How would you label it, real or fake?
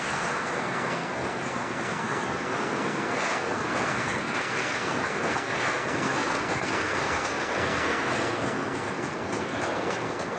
fake